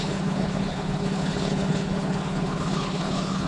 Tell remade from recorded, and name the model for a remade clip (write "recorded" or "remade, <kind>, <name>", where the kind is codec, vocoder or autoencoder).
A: remade, codec, HILCodec